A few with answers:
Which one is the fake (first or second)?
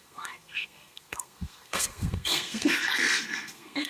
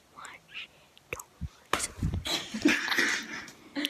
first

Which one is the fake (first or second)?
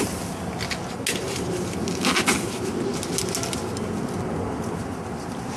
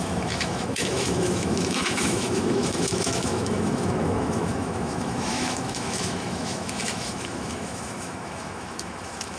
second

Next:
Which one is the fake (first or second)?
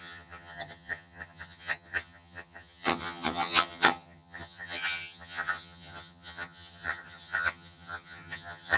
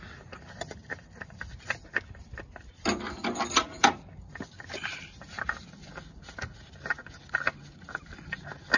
first